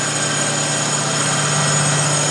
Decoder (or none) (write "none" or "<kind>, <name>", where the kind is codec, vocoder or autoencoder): none